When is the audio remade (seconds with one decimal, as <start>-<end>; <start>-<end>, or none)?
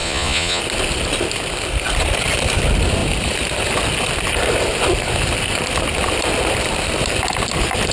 0.0-0.6